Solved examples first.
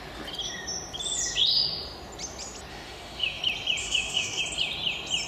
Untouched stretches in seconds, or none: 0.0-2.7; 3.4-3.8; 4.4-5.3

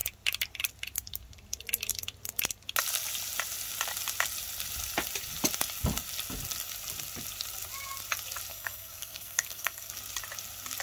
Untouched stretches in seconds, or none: 0.0-8.5; 9.9-10.8

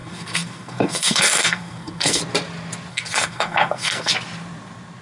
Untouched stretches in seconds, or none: 2.2-2.9; 4.1-5.0